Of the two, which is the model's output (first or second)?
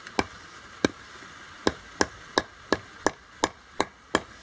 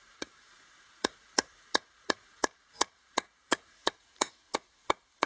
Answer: second